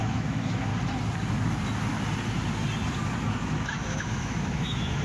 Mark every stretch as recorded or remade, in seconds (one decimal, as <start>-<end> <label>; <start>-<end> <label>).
0.0-0.7 remade; 0.7-3.3 recorded; 3.3-5.0 remade